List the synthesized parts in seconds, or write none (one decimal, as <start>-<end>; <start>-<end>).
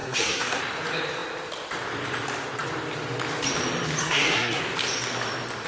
0.0-0.6; 4.0-4.6